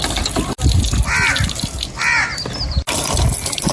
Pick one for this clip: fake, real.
real